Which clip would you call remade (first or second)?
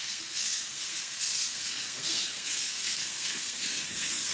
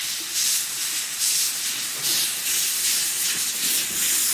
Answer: first